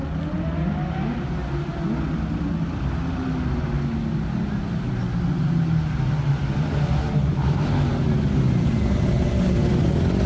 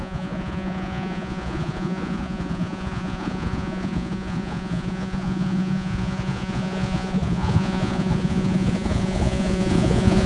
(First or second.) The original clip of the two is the first